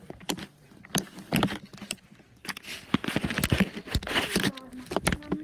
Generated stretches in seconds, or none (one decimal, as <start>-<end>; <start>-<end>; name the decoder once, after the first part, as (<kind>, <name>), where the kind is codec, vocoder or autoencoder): none